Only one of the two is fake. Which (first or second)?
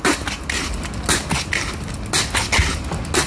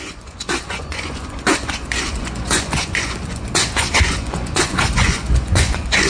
second